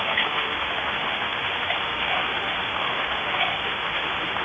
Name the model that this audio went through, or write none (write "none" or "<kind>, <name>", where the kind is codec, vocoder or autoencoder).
autoencoder, DAC-VAE